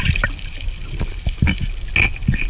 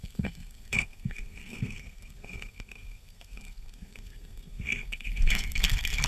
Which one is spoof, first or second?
second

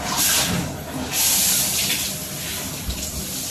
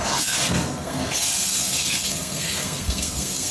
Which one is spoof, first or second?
second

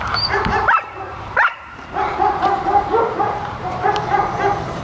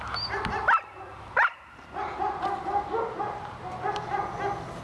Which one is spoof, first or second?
first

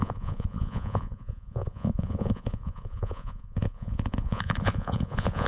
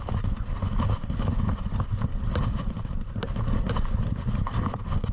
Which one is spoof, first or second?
first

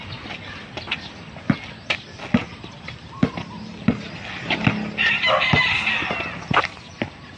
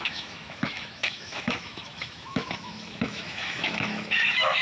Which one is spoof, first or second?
second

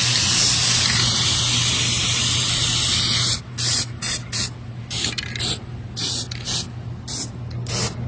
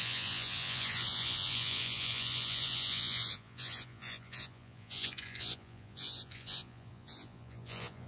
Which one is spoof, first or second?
second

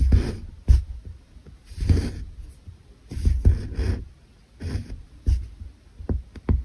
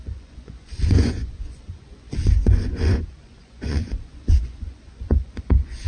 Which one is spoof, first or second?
second